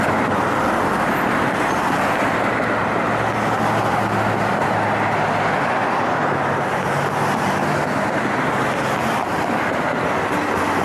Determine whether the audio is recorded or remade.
recorded